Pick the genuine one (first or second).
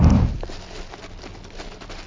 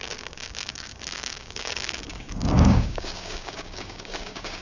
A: first